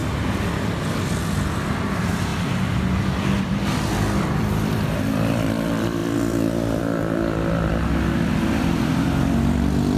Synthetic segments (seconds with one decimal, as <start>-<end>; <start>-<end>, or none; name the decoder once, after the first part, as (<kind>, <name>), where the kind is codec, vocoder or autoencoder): 1.1-2.3 (vocoder, BigVGAN v2); 3.4-7.7; 8.5-10.0

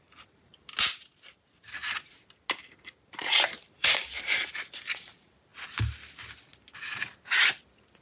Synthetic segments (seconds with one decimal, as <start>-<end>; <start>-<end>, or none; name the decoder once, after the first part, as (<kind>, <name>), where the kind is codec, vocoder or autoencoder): 0.0-0.5 (vocoder, BigVGAN v2); 2.9-5.5